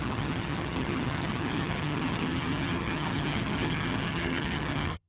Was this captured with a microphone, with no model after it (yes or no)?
no